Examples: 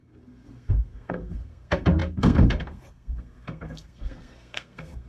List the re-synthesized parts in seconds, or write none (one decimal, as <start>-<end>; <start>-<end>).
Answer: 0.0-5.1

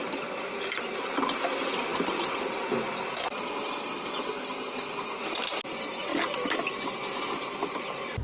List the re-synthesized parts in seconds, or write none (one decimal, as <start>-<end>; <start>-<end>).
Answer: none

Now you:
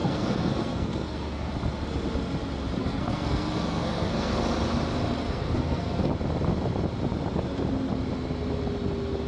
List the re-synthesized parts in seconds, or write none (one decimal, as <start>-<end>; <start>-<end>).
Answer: 0.0-1.5; 2.8-4.3; 5.2-6.1